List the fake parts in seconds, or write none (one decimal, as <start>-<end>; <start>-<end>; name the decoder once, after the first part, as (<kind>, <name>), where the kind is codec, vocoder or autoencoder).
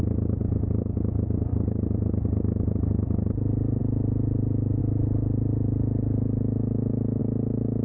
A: none